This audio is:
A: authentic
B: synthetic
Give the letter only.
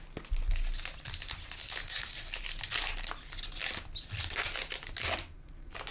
A